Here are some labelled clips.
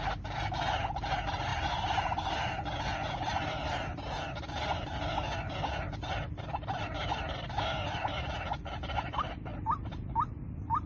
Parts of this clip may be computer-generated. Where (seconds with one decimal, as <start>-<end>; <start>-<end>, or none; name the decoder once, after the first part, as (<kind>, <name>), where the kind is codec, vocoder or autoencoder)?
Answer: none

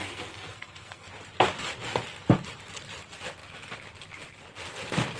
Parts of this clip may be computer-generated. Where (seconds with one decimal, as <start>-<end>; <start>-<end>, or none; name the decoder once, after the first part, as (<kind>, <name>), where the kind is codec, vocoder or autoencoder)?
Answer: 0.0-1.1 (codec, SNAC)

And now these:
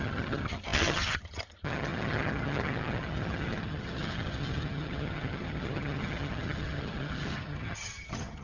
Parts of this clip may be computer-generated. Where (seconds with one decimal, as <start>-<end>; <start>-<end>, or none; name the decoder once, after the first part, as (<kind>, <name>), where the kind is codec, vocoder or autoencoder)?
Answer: 0.0-8.4 (vocoder, HiFi-GAN)

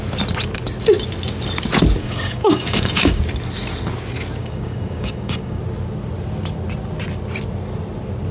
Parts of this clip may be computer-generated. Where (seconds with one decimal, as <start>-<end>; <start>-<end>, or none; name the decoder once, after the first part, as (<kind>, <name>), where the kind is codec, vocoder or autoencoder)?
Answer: 2.0-3.2 (codec, DAC); 4.4-5.6

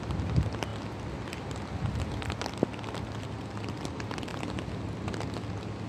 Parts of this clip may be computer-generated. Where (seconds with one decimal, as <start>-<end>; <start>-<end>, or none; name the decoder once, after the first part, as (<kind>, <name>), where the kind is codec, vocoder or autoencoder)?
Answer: none

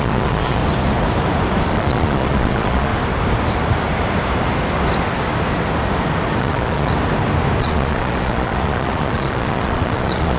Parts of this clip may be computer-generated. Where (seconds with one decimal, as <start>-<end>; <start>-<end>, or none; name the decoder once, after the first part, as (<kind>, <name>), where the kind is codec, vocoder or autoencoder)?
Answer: 0.0-0.6 (vocoder, Vocos); 1.7-2.9; 6.4-6.9; 7.6-10.4

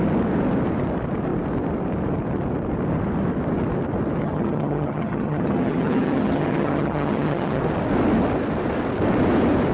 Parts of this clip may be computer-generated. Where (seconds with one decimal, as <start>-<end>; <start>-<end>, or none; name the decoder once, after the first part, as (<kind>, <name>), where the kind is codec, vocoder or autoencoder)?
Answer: 4.2-7.6 (vocoder, HiFi-GAN)

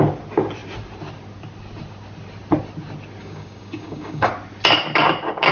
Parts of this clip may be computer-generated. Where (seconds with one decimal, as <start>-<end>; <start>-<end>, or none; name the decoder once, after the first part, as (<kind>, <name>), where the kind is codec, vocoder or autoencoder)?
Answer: 3.2-4.3 (codec, DAC)